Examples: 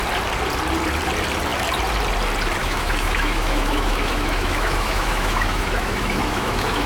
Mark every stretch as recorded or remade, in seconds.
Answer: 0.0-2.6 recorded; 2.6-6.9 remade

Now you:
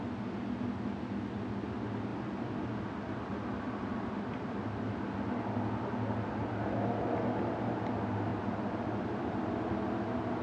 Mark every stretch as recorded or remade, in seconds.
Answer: 0.0-2.1 recorded; 2.1-5.0 remade; 5.0-8.3 recorded; 8.3-9.6 remade; 9.6-10.4 recorded